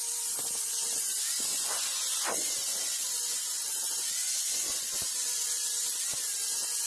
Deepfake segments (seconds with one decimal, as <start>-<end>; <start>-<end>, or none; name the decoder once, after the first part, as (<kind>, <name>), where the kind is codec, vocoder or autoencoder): 1.5-5.0 (vocoder, Vocos)